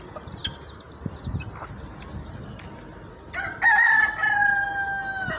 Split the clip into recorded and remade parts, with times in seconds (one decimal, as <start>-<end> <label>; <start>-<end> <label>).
0.0-5.4 recorded